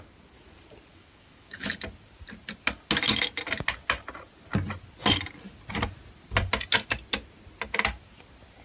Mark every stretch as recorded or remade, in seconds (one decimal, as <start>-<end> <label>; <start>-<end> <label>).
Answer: 0.0-0.9 recorded; 0.9-1.7 remade; 1.7-8.6 recorded